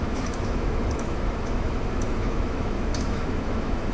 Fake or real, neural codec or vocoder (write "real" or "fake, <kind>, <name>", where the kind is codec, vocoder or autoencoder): fake, autoencoder, DAC-VAE